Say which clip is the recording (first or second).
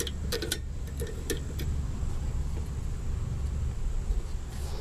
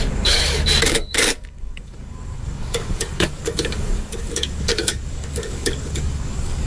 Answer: first